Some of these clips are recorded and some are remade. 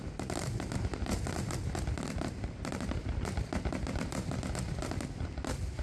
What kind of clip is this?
recorded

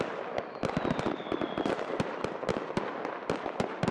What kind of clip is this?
recorded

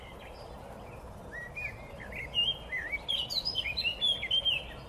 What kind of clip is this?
recorded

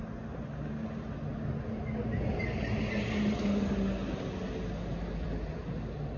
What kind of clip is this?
recorded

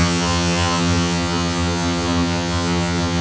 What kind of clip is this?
remade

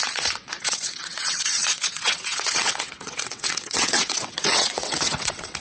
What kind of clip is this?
remade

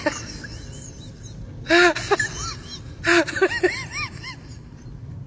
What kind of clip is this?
recorded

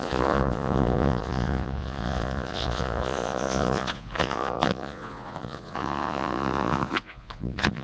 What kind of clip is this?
remade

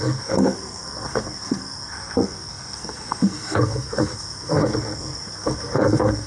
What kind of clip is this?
remade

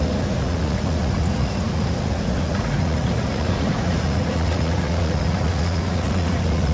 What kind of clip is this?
remade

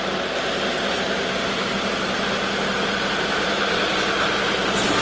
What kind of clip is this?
recorded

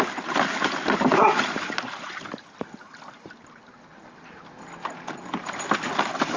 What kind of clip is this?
recorded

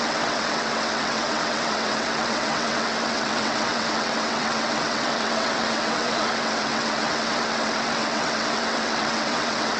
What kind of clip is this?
remade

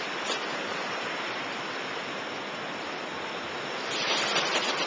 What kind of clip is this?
recorded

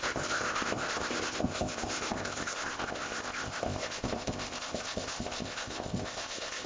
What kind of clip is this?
remade